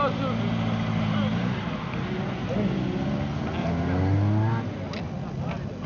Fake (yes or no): no